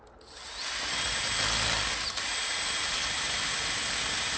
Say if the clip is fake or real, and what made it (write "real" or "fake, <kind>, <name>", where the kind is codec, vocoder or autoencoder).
real